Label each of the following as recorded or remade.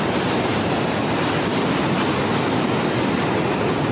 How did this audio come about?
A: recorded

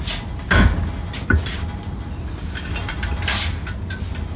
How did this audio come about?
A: recorded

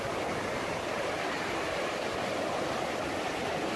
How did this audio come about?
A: recorded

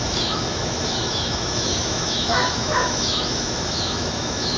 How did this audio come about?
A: remade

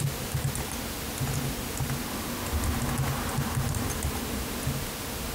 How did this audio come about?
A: recorded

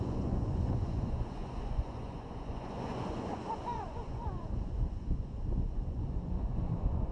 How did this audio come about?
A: remade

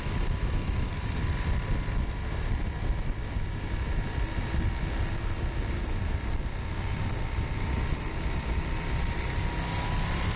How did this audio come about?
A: recorded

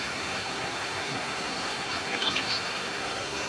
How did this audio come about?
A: remade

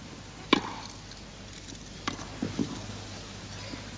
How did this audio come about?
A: recorded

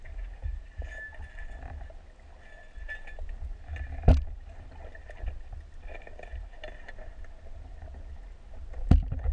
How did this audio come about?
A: recorded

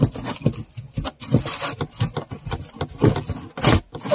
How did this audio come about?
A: recorded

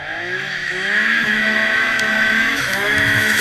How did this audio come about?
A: remade